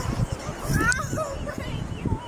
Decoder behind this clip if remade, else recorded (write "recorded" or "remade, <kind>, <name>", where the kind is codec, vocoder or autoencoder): recorded